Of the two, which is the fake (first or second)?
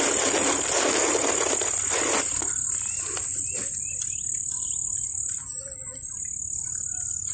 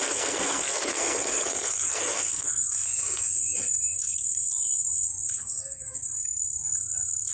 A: second